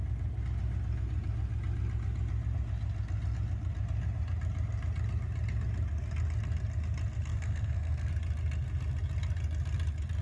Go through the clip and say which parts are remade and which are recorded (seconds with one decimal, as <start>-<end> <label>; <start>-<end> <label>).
0.0-7.3 recorded; 7.3-8.1 remade; 8.1-10.2 recorded